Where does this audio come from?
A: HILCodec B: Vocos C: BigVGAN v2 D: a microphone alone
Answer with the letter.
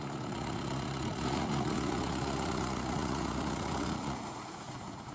B